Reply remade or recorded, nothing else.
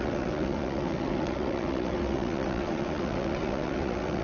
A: remade